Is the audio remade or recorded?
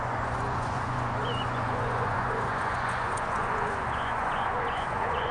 remade